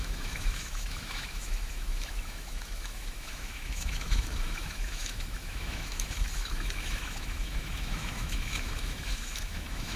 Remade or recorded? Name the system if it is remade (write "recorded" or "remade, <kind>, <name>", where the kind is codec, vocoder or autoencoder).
remade, autoencoder, DAC-VAE